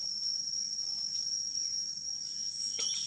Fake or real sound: real